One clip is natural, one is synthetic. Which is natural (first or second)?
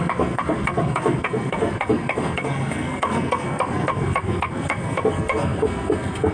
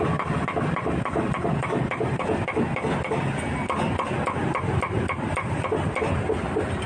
second